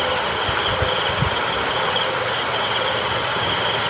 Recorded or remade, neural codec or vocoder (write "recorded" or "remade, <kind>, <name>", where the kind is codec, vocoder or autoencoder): recorded